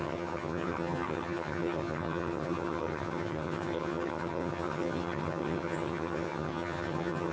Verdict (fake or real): fake